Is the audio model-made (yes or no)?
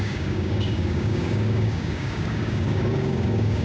yes